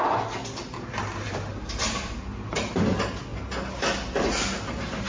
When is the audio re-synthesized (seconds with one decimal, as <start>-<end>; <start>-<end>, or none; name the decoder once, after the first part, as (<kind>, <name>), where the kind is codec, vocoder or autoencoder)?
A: 1.5-2.9 (vocoder, BigVGAN v2)